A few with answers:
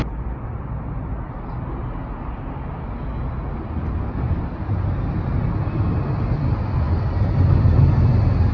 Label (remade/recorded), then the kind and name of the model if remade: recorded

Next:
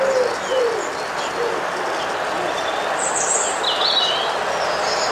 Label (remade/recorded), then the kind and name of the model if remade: recorded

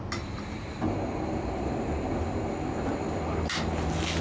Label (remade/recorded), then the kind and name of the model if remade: recorded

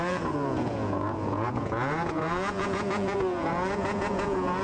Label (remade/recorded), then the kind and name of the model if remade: remade, vocoder, Vocos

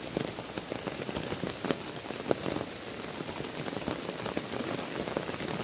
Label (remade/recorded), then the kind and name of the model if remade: recorded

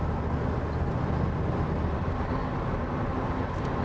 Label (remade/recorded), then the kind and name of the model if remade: recorded